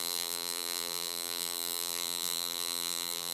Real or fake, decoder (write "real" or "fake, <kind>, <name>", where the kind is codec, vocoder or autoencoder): fake, vocoder, BigVGAN v2